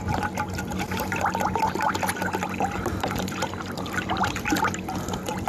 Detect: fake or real real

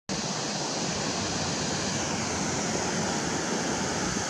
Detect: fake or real real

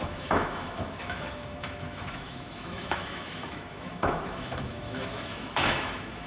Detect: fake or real fake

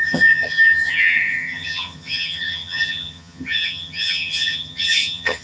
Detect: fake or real fake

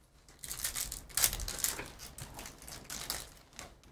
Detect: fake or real real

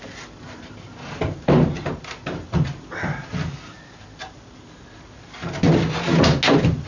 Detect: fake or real real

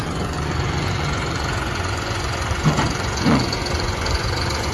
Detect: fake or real fake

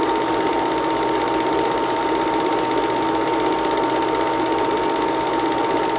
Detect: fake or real real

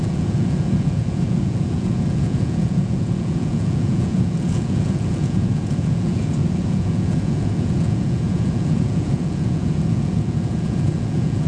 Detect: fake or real fake